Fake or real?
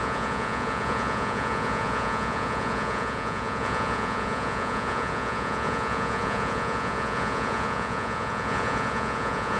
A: fake